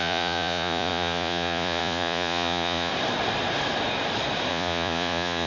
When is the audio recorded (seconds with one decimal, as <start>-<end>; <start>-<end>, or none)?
2.9-4.5

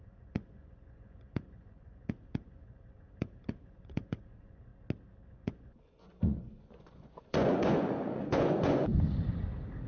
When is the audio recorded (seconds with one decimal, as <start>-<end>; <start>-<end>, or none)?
4.7-5.3; 8.9-9.9

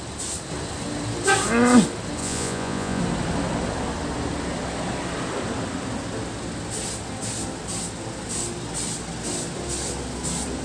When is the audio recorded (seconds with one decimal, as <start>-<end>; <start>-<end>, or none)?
0.0-2.2; 3.0-10.6